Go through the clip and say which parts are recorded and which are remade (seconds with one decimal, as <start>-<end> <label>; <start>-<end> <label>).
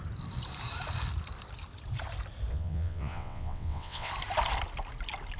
0.0-2.5 recorded; 2.5-4.1 remade; 4.1-5.4 recorded